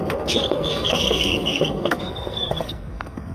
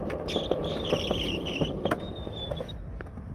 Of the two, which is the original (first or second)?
second